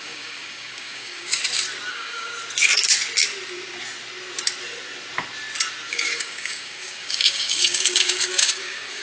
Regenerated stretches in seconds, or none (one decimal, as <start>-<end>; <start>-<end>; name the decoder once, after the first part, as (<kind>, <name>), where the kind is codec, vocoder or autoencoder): 0.0-1.4 (codec, DAC); 1.9-2.3; 5.9-9.0

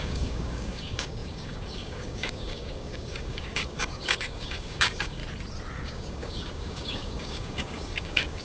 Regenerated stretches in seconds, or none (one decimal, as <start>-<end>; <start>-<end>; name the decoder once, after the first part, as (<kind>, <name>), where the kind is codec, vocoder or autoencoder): 0.0-5.2 (codec, DAC); 5.8-8.4

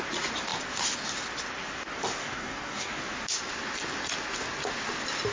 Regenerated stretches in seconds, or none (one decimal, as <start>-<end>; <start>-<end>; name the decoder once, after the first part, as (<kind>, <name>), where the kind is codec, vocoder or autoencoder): 2.2-3.0 (codec, DAC)

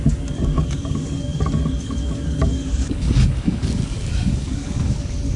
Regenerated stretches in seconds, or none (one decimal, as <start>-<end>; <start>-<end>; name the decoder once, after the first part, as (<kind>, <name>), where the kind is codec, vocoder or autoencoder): 0.0-5.4 (codec, DAC)

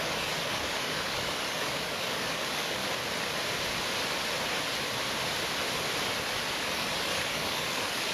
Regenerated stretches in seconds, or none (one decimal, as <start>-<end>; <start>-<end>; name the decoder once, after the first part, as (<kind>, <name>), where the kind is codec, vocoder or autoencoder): 0.0-2.8 (codec, DAC); 6.5-8.1